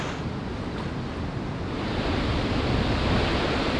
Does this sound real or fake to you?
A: real